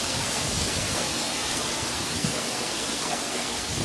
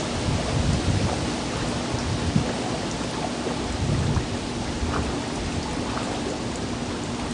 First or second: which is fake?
first